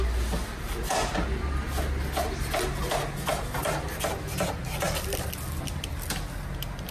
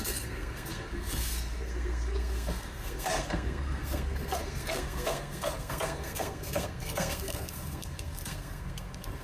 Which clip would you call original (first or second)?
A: first